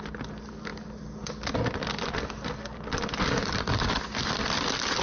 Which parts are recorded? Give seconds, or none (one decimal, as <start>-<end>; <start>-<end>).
0.0-5.0